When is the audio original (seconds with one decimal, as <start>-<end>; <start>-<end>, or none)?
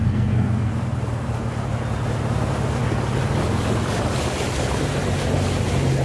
0.7-6.0